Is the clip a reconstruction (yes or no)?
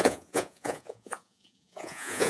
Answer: yes